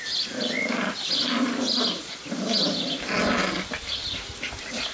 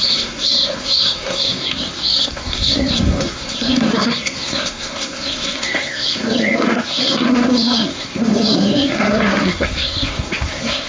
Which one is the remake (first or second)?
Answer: second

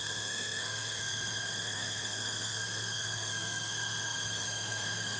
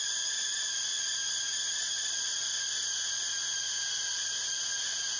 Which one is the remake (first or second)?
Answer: first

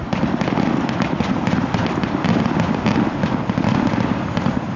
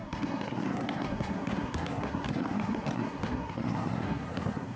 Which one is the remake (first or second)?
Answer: second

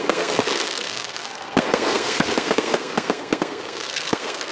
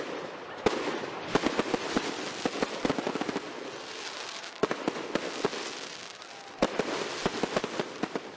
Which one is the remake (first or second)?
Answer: first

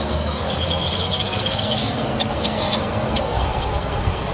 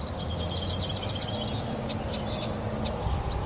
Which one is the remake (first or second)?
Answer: first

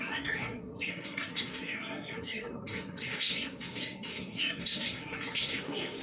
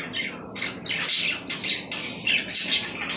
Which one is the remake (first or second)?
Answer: first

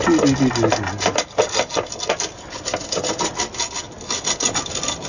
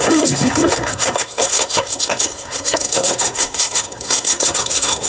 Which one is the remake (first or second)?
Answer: second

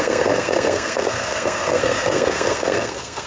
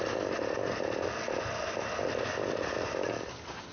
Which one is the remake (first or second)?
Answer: first